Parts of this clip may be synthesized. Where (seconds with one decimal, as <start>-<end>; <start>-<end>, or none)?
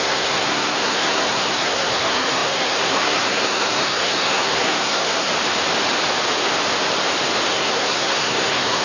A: 0.0-5.3; 7.5-8.8